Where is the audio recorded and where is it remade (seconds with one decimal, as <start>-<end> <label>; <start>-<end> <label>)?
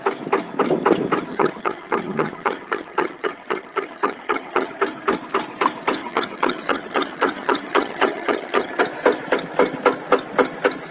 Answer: 0.0-1.3 recorded; 1.3-4.7 remade; 4.7-6.0 recorded; 6.0-8.8 remade; 8.8-10.9 recorded